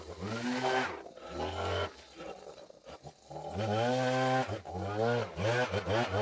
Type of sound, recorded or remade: recorded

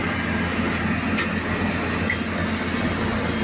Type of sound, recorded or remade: recorded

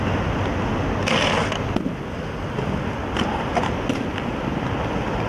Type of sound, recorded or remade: recorded